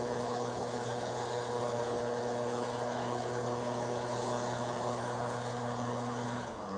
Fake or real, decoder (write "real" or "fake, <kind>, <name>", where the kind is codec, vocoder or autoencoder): fake, codec, HILCodec